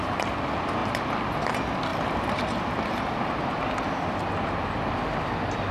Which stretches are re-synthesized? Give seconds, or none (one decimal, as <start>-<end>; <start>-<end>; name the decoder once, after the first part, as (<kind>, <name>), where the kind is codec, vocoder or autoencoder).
none